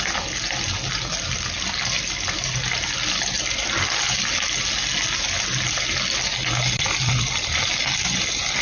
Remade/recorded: recorded